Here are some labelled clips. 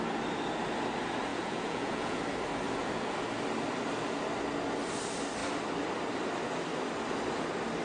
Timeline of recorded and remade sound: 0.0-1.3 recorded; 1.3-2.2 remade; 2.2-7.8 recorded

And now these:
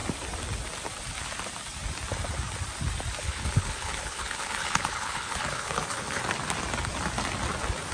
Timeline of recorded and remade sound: 0.0-3.2 recorded; 3.2-6.2 remade; 6.2-7.9 recorded